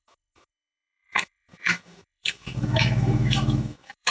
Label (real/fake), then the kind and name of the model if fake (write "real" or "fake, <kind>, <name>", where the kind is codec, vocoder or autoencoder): fake, autoencoder, DAC-VAE